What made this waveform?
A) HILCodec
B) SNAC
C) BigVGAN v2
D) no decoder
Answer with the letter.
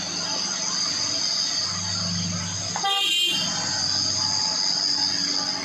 D